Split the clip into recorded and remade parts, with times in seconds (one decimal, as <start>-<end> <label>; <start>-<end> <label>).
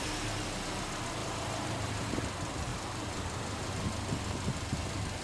0.0-1.2 recorded; 1.2-2.2 remade; 2.2-2.7 recorded; 2.7-3.7 remade; 3.7-5.2 recorded